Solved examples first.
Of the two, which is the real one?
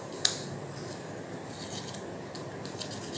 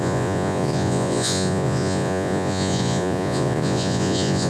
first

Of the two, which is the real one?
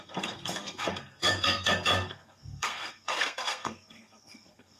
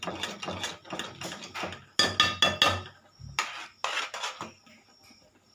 second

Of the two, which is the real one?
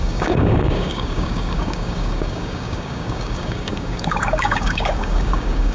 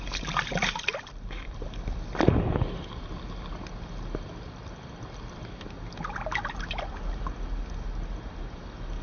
second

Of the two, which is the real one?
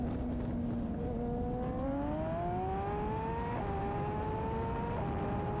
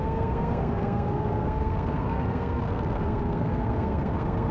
first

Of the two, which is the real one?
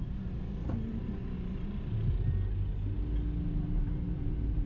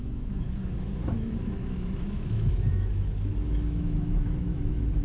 first